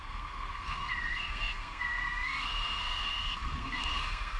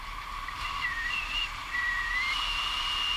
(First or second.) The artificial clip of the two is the first